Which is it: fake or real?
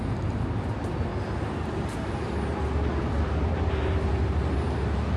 real